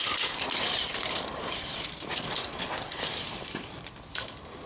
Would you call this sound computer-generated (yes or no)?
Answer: yes